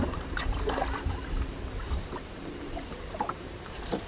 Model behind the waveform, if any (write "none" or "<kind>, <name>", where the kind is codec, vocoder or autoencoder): vocoder, BigVGAN v2